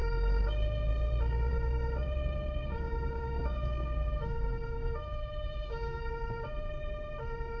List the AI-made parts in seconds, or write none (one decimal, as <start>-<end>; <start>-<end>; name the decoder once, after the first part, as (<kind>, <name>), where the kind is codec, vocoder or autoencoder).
0.0-0.9 (codec, DAC); 1.5-6.1